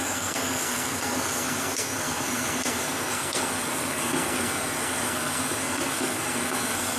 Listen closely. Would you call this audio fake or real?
fake